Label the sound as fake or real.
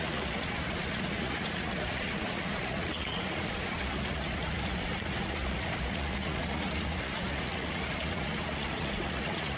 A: fake